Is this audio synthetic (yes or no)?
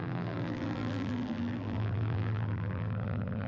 yes